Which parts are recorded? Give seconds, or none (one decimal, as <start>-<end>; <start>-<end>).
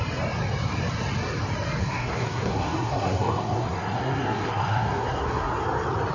0.0-1.8; 5.5-6.1